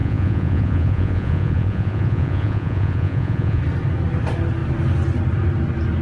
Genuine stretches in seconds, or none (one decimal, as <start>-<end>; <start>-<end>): 3.6-6.0